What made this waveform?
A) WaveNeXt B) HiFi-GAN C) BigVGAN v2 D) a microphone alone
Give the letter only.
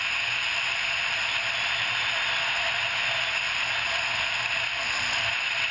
D